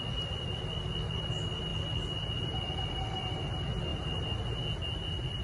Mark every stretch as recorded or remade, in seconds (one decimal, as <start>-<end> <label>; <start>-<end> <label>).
0.0-5.4 recorded